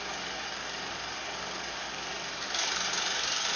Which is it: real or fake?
fake